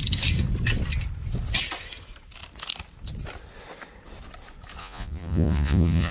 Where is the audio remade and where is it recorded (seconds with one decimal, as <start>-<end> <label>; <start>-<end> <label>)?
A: 0.0-4.8 recorded; 4.8-6.1 remade